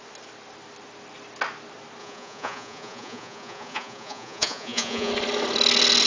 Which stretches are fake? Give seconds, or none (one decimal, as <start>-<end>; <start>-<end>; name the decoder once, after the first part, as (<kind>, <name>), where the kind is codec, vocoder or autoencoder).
2.0-5.1 (vocoder, Vocos)